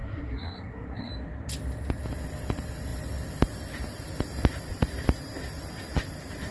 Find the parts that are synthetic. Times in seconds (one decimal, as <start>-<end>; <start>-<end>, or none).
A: 0.0-1.1